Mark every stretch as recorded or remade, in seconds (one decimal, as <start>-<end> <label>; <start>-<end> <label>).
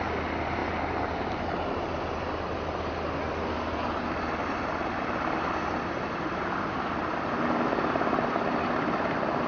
0.0-9.5 recorded